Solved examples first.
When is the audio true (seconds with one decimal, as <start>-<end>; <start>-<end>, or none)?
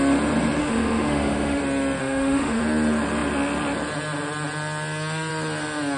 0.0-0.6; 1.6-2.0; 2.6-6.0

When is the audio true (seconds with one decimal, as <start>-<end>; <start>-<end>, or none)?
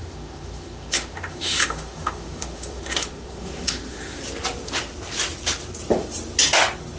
4.2-7.0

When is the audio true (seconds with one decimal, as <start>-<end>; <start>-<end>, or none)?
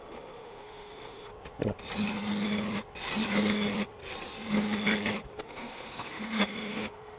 1.3-5.4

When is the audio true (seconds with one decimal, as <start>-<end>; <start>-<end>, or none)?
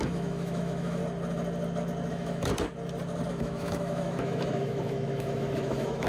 1.0-2.1; 2.5-3.3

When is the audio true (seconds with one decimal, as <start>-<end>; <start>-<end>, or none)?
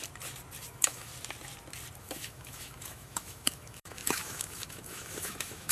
0.0-0.7; 1.1-2.0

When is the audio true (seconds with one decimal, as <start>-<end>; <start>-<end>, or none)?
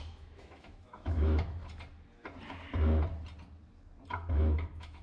1.6-4.3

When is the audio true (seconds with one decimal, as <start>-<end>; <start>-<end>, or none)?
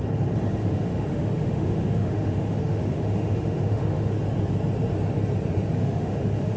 0.0-0.6; 4.1-5.8